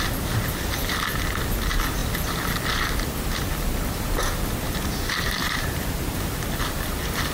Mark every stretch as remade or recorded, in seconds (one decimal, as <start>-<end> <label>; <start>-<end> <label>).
0.0-5.4 recorded; 5.4-6.4 remade; 6.4-7.3 recorded